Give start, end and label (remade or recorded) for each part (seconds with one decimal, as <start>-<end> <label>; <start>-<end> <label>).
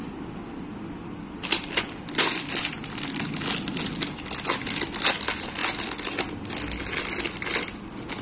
0.0-8.2 recorded